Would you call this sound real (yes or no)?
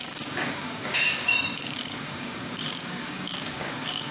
no